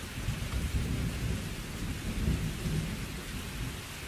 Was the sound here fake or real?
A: real